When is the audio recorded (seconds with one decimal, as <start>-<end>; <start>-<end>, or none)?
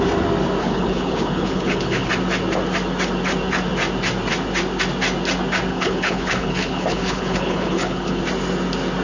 0.0-0.6; 2.1-5.7; 8.2-9.0